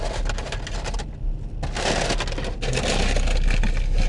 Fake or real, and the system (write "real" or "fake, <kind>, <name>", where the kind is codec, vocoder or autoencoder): real